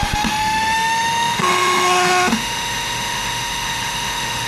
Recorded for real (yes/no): no